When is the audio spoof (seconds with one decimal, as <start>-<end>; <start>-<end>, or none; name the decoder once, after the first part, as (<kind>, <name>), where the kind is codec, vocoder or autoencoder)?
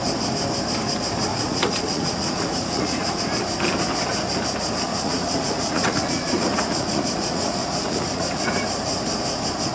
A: 1.3-3.2 (vocoder, Vocos); 4.9-8.6